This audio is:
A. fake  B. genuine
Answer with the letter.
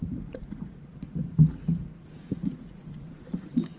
A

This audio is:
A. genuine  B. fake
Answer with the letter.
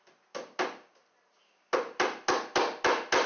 A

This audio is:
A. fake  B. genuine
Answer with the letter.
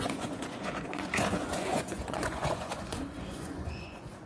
A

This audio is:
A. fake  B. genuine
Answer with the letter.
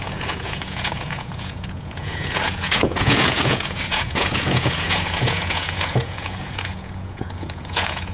A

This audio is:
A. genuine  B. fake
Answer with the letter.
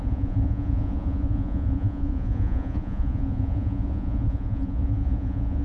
B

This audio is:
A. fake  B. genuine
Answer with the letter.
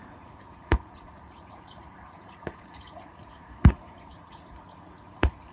A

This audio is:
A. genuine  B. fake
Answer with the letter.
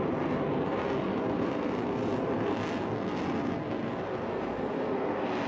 A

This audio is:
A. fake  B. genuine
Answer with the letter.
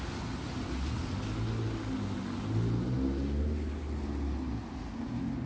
B